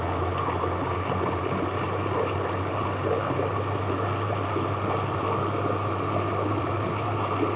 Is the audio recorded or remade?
recorded